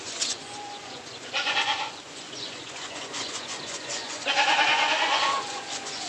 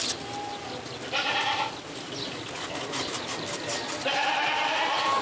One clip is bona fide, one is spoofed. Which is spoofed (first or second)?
first